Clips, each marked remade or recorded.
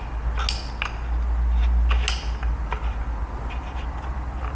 recorded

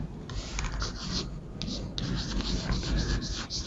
recorded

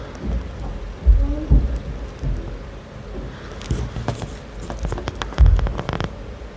recorded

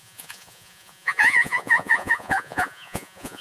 remade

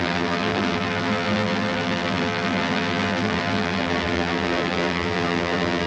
remade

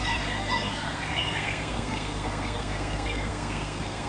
remade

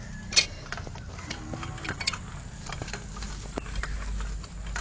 recorded